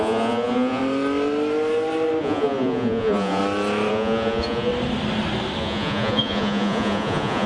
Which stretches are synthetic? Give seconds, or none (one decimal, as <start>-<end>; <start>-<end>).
0.0-0.8; 2.2-3.4; 3.9-4.7; 5.6-7.5